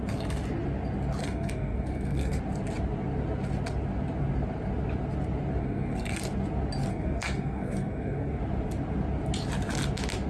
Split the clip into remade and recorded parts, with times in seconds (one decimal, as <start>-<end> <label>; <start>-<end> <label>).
0.0-1.2 recorded; 1.2-2.4 remade; 2.4-5.6 recorded; 5.6-6.2 remade; 6.2-6.9 recorded; 6.9-8.4 remade; 8.4-10.3 recorded